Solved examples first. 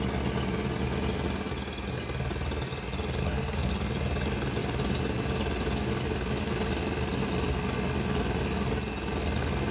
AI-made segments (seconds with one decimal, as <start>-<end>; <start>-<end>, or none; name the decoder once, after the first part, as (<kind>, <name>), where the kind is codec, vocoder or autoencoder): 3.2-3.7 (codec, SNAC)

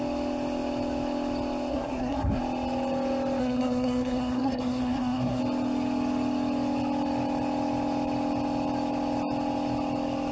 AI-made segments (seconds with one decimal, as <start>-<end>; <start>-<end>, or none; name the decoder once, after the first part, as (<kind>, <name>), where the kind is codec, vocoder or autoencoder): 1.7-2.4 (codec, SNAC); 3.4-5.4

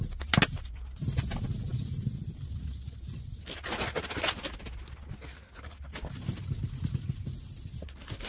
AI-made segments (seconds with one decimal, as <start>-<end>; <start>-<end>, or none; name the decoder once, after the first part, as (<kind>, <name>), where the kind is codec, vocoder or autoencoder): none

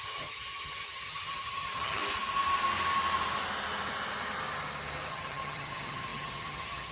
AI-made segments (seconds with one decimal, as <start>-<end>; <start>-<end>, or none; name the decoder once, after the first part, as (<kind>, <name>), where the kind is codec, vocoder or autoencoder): 0.0-2.0 (vocoder, HiFi-GAN); 5.1-6.9

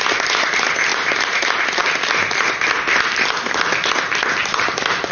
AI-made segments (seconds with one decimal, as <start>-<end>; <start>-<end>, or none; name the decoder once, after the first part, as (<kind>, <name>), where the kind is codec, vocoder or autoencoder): 0.9-1.4 (vocoder, BigVGAN v2)

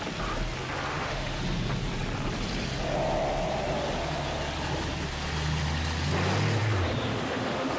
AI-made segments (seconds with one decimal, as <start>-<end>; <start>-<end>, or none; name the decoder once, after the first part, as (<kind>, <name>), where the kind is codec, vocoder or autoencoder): 0.9-1.4 (autoencoder, DAC-VAE); 7.1-7.8